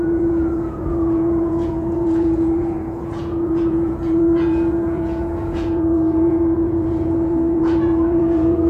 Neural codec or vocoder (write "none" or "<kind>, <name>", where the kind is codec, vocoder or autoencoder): vocoder, Vocos